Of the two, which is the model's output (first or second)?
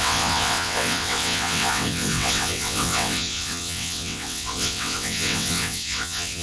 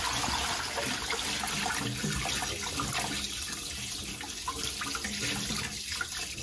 first